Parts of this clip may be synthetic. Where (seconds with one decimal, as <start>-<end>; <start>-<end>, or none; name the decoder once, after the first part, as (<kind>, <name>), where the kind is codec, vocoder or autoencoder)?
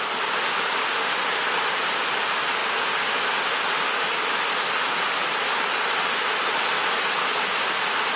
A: none